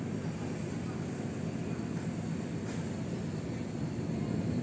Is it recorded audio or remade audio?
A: recorded